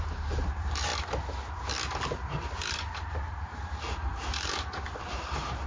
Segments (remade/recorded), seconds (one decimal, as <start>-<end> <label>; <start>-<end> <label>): 0.0-0.9 remade; 0.9-2.7 recorded; 2.7-5.7 remade